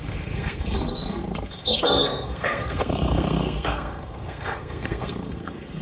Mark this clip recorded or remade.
remade